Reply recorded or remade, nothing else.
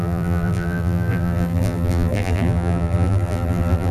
remade